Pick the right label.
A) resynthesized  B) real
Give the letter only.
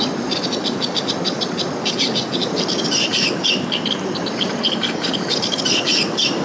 B